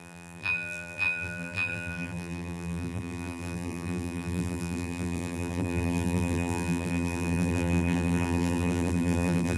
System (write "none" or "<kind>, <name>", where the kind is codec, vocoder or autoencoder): vocoder, BigVGAN v2